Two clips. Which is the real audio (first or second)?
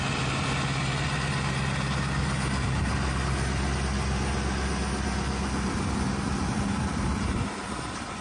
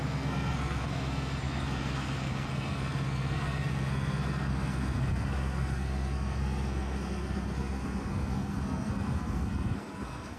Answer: first